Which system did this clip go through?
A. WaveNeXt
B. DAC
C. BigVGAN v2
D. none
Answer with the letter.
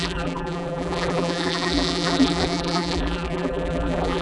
C